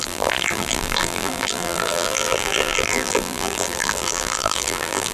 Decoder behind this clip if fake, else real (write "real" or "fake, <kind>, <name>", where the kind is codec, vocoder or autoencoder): fake, vocoder, BigVGAN v2